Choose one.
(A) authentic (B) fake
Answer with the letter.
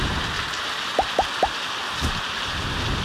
A